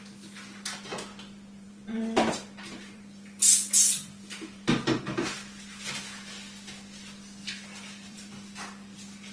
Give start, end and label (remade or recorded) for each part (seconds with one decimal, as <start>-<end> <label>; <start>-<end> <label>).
0.0-0.9 recorded; 0.9-6.0 remade; 6.0-7.4 recorded; 7.4-8.3 remade; 8.3-9.3 recorded